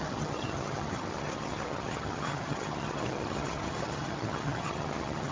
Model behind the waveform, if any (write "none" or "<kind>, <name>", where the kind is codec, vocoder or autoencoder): vocoder, HiFi-GAN